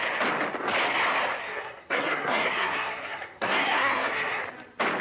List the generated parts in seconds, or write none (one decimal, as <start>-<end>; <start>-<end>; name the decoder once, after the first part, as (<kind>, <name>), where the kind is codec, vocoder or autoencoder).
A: 1.4-4.4 (codec, SNAC)